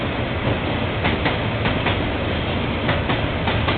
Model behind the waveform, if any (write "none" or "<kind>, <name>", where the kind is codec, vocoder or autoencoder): none